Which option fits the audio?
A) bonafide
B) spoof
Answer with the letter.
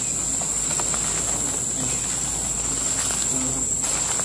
A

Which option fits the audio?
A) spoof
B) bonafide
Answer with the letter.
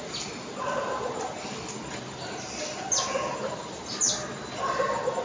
B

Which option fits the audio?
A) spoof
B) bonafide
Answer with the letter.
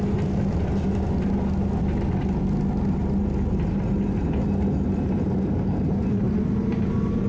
B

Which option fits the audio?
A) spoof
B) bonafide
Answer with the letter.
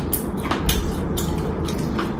B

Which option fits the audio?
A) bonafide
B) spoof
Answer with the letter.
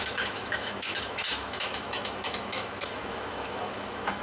B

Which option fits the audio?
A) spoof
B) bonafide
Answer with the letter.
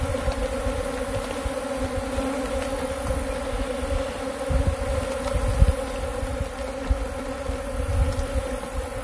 B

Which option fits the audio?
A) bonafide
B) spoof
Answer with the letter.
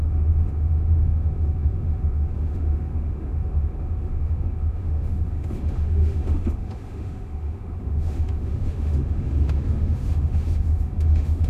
B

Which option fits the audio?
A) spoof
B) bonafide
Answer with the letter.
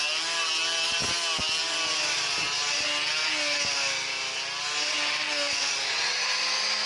B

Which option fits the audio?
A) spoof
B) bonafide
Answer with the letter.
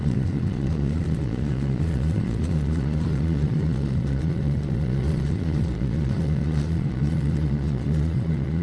A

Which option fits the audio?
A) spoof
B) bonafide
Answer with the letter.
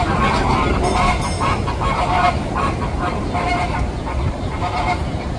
B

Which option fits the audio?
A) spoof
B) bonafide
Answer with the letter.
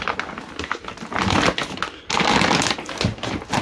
B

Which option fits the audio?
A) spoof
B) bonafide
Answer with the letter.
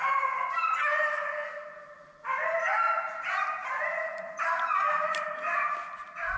B